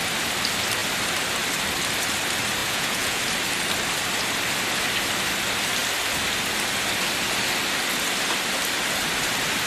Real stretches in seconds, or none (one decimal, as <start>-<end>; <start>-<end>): 0.0-2.6; 3.2-9.7